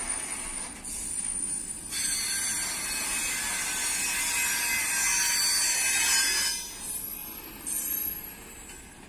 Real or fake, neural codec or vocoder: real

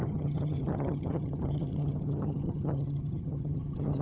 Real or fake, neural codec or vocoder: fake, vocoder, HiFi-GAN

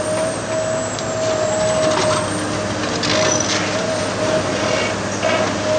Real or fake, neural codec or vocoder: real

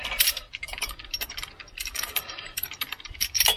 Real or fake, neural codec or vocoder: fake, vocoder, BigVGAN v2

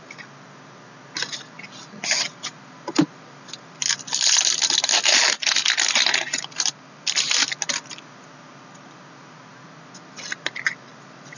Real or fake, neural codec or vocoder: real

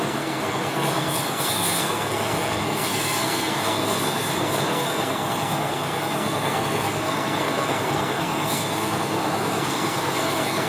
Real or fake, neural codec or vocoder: fake, codec, SNAC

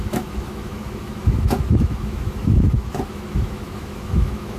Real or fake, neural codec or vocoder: fake, autoencoder, DAC-VAE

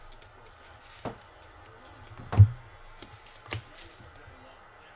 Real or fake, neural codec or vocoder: real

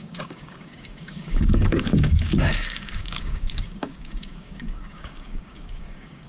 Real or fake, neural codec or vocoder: fake, codec, DAC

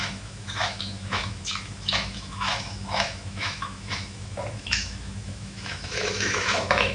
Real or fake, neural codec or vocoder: fake, autoencoder, DAC-VAE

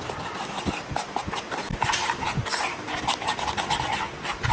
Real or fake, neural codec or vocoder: real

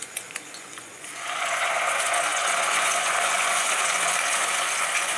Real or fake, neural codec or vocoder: fake, vocoder, Vocos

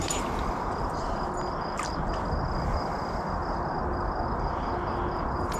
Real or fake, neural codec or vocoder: real